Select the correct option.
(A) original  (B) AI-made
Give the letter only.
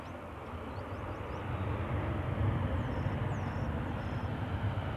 A